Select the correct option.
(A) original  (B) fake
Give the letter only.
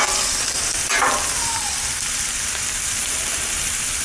B